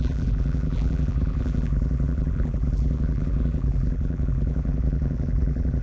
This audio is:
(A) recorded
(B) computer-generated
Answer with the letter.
B